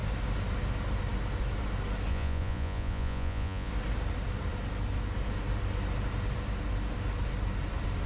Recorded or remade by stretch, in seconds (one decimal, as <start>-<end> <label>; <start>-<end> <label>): 0.0-2.1 recorded; 2.1-3.7 remade; 3.7-8.1 recorded